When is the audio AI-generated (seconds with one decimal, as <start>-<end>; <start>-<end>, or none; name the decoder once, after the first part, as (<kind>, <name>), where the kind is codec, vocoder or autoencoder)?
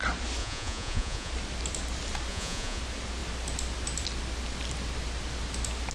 0.4-1.3 (vocoder, Vocos); 2.3-2.8